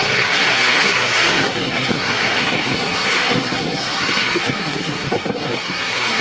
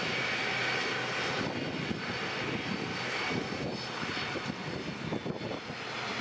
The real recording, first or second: second